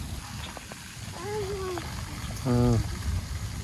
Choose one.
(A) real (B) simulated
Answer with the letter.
A